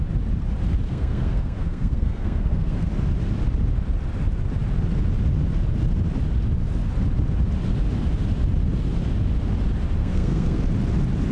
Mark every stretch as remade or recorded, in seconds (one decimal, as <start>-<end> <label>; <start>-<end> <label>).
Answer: 0.0-0.9 recorded; 0.9-2.9 remade; 2.9-10.0 recorded; 10.0-10.6 remade; 10.6-11.3 recorded